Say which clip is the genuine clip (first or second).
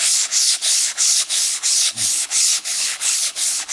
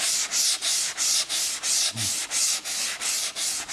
second